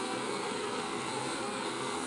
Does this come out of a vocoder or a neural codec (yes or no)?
yes